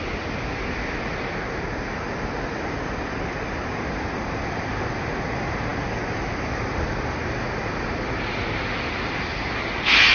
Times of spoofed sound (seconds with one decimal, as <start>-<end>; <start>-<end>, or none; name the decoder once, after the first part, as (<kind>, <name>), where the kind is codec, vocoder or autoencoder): none